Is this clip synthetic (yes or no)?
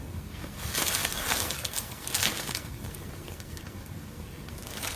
yes